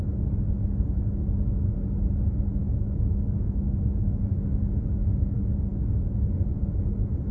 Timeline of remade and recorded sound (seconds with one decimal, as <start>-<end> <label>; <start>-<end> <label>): 0.0-2.6 recorded; 2.6-4.6 remade; 4.6-7.3 recorded